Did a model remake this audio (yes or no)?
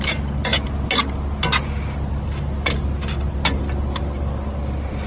no